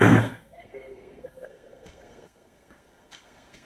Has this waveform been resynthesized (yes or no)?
yes